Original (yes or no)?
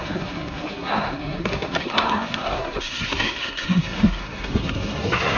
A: no